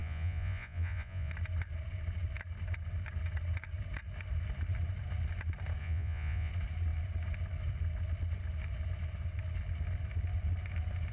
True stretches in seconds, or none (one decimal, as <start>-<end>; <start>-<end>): 1.3-5.8; 6.5-11.1